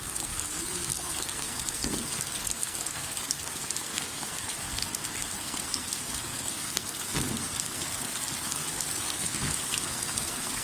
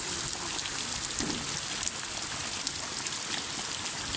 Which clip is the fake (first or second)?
first